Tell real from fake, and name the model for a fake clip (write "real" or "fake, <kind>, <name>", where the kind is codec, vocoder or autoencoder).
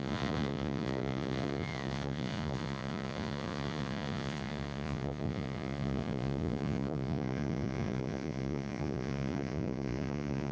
fake, vocoder, Vocos